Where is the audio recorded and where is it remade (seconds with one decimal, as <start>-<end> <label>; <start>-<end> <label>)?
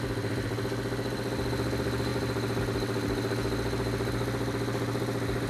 0.0-5.5 recorded